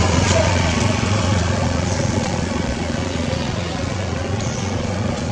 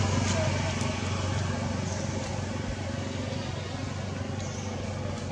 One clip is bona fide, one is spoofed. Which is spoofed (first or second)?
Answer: first